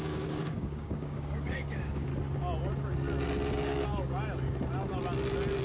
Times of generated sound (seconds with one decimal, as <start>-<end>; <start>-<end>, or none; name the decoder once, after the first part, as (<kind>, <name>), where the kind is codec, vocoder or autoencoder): 0.0-2.1 (codec, DAC)